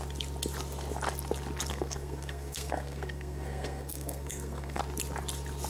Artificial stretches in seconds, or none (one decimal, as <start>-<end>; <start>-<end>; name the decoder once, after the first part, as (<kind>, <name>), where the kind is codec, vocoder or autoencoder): 1.7-4.8 (codec, SNAC)